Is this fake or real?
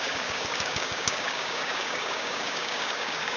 fake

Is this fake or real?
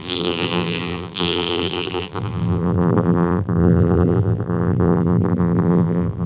fake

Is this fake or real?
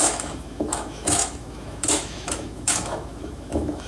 fake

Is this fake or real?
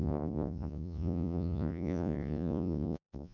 fake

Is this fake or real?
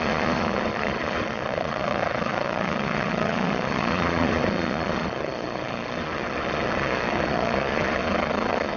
fake